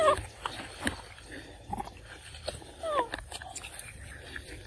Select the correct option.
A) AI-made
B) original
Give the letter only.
B